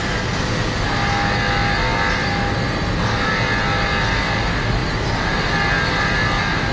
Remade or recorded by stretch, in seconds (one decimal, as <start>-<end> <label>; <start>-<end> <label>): 0.0-6.7 recorded